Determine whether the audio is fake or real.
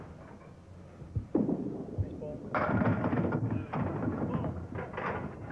real